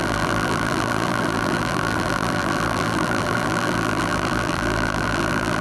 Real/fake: fake